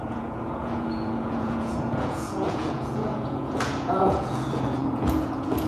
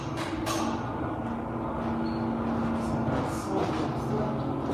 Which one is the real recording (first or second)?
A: second